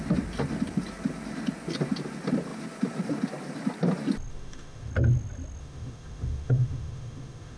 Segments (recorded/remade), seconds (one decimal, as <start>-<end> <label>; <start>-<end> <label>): 0.0-4.3 recorded; 4.3-4.9 remade; 4.9-5.6 recorded; 5.6-7.6 remade